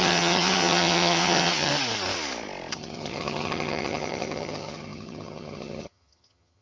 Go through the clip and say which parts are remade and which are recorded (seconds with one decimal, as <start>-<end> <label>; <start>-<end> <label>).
0.0-1.7 remade; 1.7-2.7 recorded; 2.7-6.6 remade